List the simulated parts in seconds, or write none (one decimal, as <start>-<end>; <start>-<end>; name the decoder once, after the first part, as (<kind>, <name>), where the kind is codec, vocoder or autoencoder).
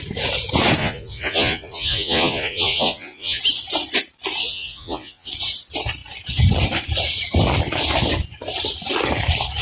0.8-3.4 (vocoder, Vocos); 4.4-5.3